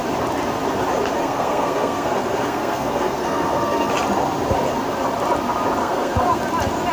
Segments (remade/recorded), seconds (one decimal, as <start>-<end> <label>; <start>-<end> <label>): 0.0-1.2 recorded; 1.2-3.9 remade; 3.9-5.8 recorded; 5.8-6.4 remade; 6.4-6.9 recorded